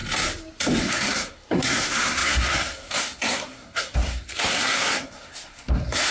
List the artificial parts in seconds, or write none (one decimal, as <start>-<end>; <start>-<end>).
0.8-6.1